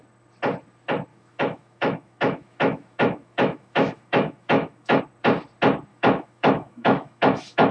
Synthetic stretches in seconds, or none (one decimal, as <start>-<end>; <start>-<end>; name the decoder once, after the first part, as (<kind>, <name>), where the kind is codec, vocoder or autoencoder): 1.1-5.0 (autoencoder, DAC-VAE); 5.9-7.7